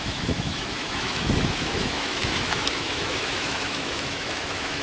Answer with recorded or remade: remade